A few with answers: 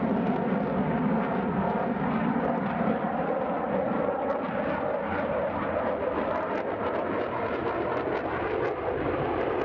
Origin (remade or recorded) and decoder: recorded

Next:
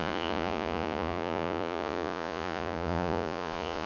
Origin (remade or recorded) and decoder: remade, vocoder, Vocos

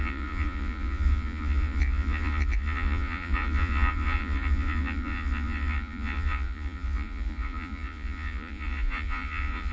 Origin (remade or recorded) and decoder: remade, vocoder, Vocos